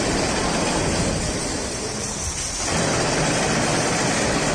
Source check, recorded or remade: remade